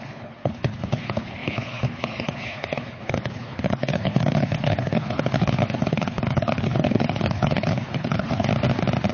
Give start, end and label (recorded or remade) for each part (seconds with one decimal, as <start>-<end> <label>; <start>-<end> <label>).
0.0-8.5 remade; 8.5-9.1 recorded

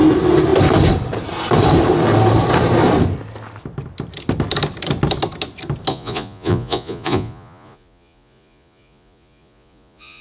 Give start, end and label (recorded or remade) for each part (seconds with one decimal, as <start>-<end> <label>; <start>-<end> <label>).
0.0-5.9 recorded; 5.9-10.2 remade

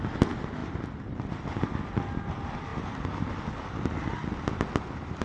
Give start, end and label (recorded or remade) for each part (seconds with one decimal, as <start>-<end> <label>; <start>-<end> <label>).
0.0-5.2 recorded

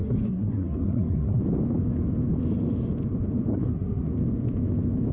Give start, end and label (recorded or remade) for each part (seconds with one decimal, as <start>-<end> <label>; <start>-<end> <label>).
0.0-1.4 remade; 1.4-3.5 recorded; 3.5-4.1 remade; 4.1-5.1 recorded

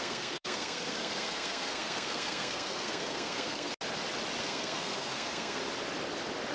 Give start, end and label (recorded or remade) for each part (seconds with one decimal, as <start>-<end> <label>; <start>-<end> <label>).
0.0-3.7 remade; 3.7-4.4 recorded; 4.4-5.6 remade; 5.6-6.5 recorded

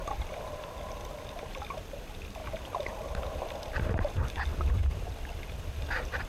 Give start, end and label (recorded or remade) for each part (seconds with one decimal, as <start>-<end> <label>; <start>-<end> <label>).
0.0-2.0 remade; 2.0-2.4 recorded; 2.4-6.3 remade

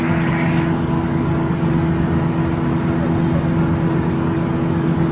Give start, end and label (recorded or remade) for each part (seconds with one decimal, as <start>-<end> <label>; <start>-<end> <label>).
0.0-2.4 remade; 2.4-4.1 recorded; 4.1-5.1 remade

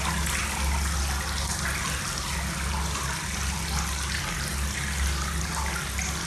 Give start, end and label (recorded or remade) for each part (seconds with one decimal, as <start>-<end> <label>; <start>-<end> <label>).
0.0-6.3 recorded